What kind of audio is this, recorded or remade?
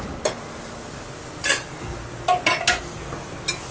recorded